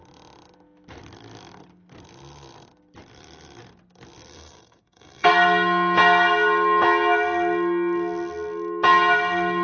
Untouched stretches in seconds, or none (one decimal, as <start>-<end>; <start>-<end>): 0.0-4.3; 5.3-9.6